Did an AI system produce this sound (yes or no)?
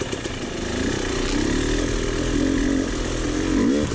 no